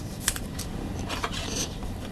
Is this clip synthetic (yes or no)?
yes